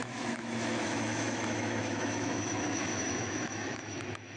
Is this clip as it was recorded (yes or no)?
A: no